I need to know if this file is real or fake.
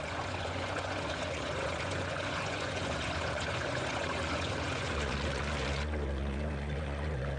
fake